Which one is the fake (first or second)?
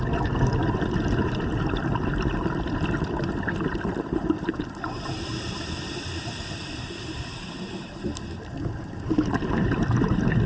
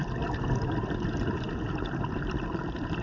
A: first